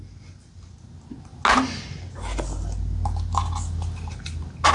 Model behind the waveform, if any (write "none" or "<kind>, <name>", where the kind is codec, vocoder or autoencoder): none